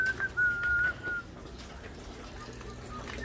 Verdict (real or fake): real